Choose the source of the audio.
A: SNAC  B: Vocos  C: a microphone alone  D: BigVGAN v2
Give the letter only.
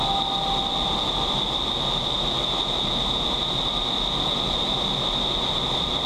C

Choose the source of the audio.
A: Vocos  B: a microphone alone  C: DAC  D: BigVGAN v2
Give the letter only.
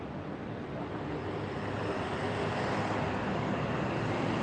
B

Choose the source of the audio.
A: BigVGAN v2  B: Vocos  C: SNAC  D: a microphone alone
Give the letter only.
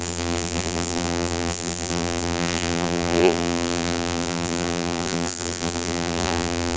A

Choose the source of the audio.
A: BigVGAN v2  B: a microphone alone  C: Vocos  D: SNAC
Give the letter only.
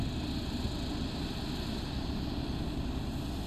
B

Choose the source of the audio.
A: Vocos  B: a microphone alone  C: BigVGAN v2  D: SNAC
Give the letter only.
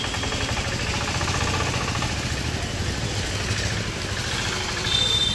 B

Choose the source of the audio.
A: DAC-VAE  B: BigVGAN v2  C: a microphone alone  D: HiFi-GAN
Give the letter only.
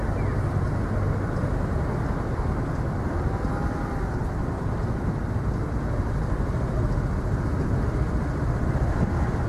C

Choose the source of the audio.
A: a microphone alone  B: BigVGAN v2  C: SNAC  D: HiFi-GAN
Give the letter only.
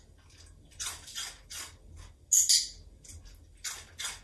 A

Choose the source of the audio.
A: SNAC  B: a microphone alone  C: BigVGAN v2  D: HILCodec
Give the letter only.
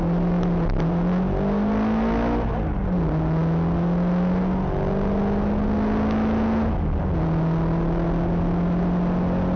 B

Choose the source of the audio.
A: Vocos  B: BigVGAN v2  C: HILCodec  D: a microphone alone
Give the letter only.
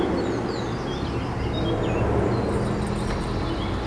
D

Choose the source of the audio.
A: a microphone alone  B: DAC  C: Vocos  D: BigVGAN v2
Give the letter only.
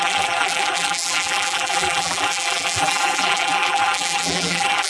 D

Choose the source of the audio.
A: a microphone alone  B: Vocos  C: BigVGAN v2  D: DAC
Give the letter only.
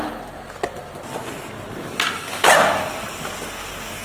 A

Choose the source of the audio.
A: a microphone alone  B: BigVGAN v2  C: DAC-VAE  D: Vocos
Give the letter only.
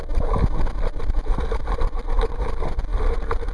A